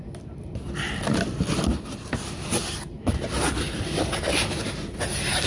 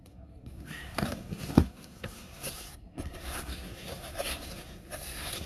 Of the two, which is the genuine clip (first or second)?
first